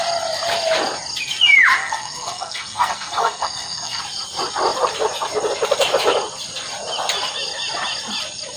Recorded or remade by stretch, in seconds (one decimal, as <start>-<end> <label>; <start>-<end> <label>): 0.0-1.8 recorded; 1.8-4.0 remade; 4.0-8.6 recorded